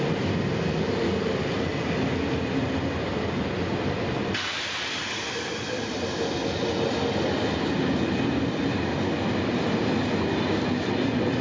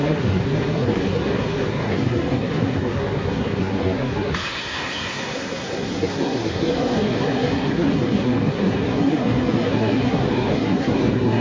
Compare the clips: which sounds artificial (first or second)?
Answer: second